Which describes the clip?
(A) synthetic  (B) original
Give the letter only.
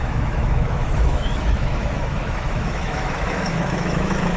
A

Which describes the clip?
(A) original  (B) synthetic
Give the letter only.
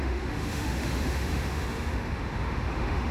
B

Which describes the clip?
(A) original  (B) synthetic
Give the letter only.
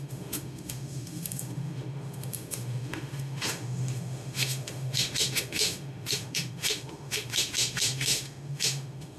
B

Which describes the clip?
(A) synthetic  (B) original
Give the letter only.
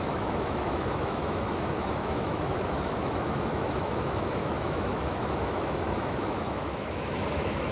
A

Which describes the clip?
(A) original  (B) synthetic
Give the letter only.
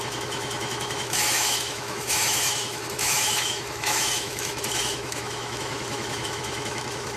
B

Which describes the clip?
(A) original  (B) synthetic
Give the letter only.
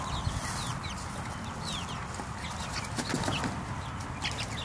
A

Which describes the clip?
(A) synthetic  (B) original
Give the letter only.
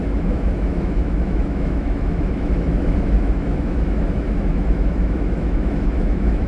A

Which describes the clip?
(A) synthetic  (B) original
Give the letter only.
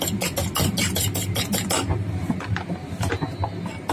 B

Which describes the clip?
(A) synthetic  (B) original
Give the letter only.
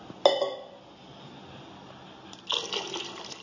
B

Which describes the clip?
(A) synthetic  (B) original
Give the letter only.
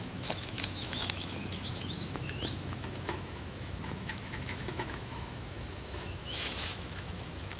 A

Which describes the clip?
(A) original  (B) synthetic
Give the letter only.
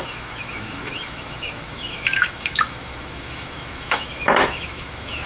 B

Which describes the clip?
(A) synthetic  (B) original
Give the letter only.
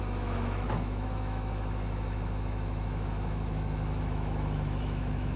A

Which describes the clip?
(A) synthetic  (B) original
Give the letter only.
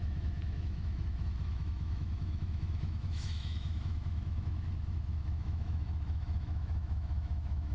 A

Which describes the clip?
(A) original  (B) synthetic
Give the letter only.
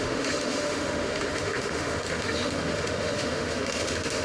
B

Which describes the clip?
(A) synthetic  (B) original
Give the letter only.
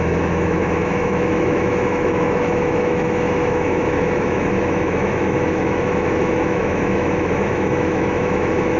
A